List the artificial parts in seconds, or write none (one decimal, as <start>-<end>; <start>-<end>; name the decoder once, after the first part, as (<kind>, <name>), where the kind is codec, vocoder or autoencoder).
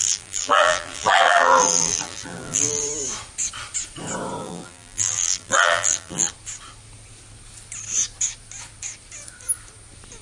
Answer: 0.0-2.8 (vocoder, BigVGAN v2); 4.4-6.3